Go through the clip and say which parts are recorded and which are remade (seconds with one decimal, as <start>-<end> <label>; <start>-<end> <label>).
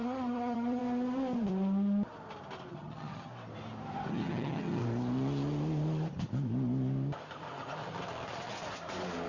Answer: 0.0-0.8 remade; 0.8-2.7 recorded; 2.7-3.3 remade; 3.3-4.1 recorded; 4.1-4.8 remade; 4.8-9.3 recorded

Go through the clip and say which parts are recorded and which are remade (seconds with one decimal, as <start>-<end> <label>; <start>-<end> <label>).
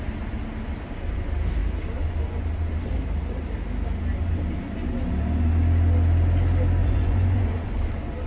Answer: 0.0-6.8 recorded; 6.8-7.9 remade; 7.9-8.3 recorded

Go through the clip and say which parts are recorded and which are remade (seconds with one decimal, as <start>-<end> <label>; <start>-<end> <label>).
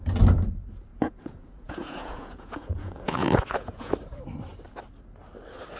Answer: 0.0-0.9 recorded; 0.9-3.9 remade; 3.9-5.8 recorded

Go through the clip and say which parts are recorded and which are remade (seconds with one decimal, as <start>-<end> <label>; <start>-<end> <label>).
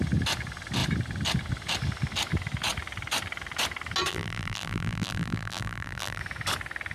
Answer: 0.0-4.1 recorded; 4.1-6.2 remade; 6.2-6.9 recorded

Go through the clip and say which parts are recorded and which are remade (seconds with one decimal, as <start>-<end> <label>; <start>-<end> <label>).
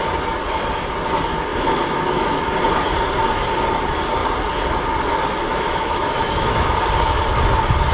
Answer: 0.0-1.5 recorded; 1.5-2.4 remade; 2.4-5.5 recorded; 5.5-6.8 remade; 6.8-7.9 recorded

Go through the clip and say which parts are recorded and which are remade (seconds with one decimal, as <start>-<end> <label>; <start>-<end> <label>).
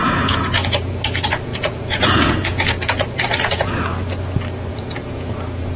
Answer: 0.0-3.9 remade; 3.9-4.7 recorded; 4.7-5.8 remade